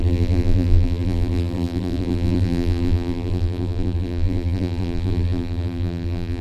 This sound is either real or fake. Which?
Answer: fake